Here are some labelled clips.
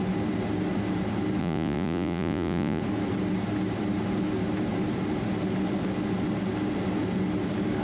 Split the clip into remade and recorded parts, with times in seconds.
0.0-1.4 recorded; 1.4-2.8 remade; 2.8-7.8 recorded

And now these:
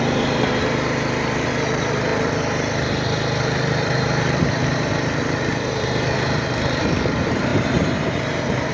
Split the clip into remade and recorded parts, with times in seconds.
0.0-2.1 remade; 2.1-3.4 recorded; 3.4-8.7 remade

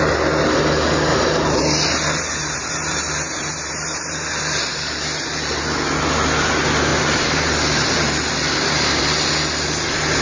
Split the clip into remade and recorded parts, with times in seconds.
0.0-1.1 recorded; 1.1-5.6 remade; 5.6-6.9 recorded; 6.9-9.3 remade; 9.3-10.2 recorded

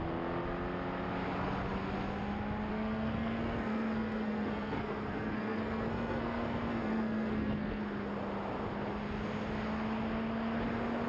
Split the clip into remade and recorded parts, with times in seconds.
0.0-2.7 recorded; 2.7-7.8 remade; 7.8-11.1 recorded

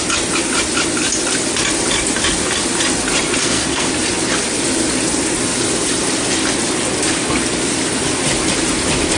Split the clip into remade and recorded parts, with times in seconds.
0.0-3.4 recorded; 3.4-3.9 remade; 3.9-9.2 recorded